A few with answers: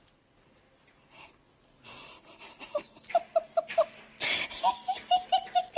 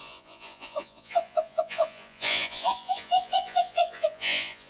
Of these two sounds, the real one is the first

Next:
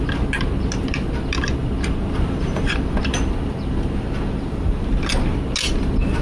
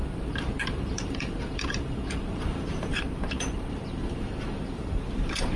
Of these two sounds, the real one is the first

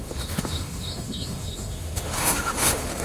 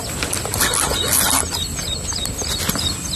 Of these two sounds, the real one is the second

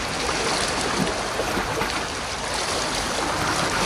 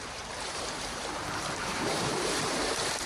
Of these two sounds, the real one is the first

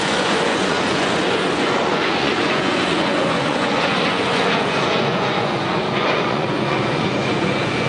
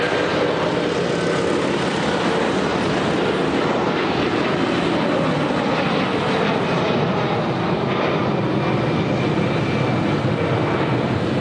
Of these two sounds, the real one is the second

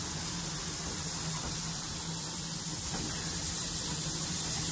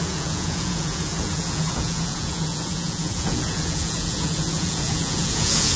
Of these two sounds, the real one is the first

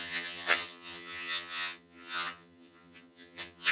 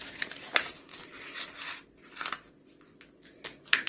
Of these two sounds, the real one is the second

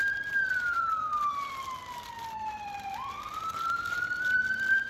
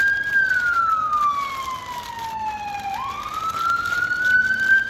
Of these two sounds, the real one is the second